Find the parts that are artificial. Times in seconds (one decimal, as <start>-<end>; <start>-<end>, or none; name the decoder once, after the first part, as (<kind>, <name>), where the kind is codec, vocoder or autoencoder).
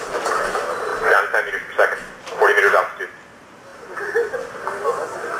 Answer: none